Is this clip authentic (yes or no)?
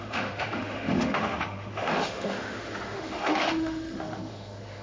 no